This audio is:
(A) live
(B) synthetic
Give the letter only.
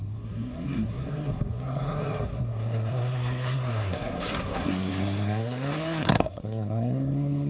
B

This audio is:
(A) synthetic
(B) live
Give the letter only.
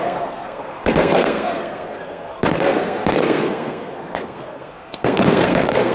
A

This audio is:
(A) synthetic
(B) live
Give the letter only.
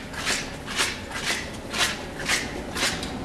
B